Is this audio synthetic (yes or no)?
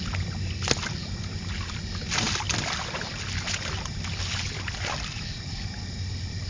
no